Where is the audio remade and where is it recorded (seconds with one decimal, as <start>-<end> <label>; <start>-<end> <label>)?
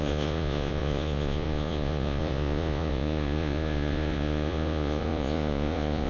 0.0-6.1 remade